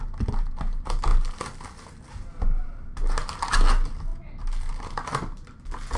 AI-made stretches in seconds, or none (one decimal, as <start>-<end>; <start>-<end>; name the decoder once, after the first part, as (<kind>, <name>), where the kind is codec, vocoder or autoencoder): none